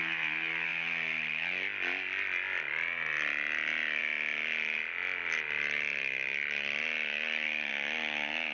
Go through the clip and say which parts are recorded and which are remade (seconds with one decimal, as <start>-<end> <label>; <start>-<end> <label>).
0.0-8.5 recorded